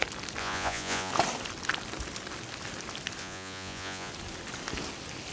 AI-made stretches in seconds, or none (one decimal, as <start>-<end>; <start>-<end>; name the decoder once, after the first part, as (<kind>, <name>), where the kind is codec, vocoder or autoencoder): 0.4-1.1 (vocoder, Vocos); 3.2-4.1